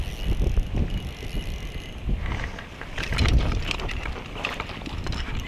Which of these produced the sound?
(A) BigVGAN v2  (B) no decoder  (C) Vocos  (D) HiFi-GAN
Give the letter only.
B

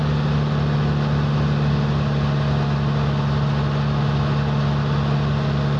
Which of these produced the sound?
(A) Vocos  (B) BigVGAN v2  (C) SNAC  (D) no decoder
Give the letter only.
D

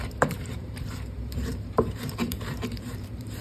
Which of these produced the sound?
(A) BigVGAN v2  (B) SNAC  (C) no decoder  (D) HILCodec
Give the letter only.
A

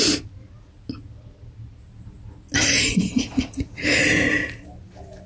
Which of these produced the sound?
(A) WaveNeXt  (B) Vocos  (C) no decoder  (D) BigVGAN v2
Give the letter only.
C